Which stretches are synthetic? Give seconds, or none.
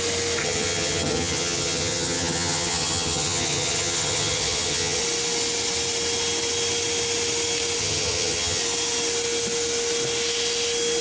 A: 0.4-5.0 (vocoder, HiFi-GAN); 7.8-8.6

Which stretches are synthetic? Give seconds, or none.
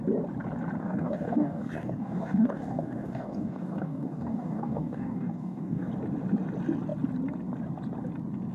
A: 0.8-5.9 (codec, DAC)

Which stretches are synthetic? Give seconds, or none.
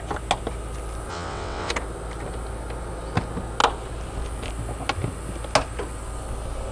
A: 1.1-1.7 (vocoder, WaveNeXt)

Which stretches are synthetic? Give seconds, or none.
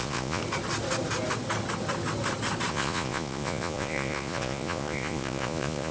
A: 0.0-0.4 (vocoder, Vocos); 2.7-5.9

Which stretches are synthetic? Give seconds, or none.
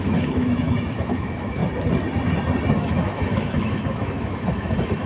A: 0.0-1.6 (autoencoder, DAC-VAE); 2.7-5.1